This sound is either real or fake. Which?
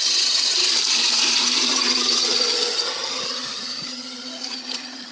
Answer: fake